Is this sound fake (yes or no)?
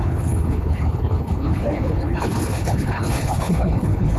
yes